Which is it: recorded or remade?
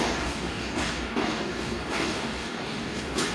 remade